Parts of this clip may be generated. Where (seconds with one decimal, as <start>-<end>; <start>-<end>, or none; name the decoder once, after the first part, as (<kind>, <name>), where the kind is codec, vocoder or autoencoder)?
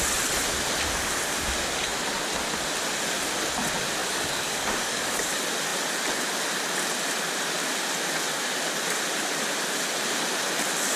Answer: 4.0-5.3 (codec, DAC)